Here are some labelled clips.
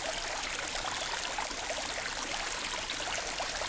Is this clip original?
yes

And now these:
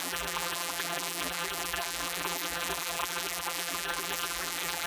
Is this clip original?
no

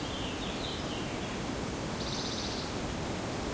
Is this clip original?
no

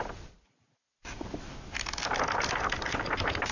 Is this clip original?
yes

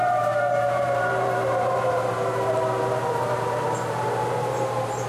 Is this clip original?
no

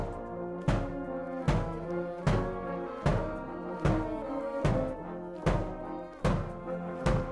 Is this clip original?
yes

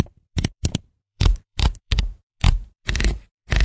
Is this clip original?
no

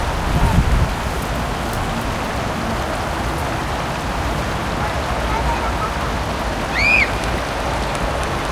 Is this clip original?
yes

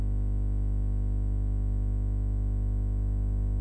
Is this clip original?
yes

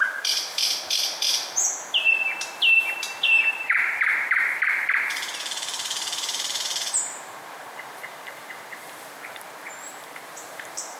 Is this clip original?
no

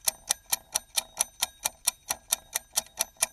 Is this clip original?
yes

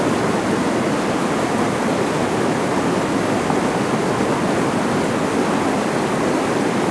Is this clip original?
yes